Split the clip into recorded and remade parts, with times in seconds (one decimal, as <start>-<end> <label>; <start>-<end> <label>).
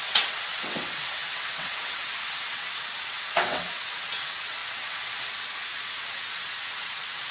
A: 0.0-7.3 remade